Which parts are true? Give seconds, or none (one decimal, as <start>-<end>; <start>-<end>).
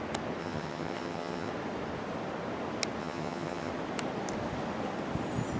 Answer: 0.0-0.4; 1.5-3.0; 3.7-5.6